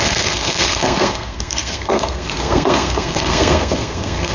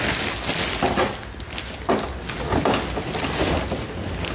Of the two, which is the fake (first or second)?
first